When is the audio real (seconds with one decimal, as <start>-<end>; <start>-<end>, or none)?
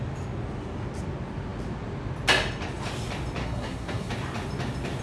0.0-3.4; 4.1-5.0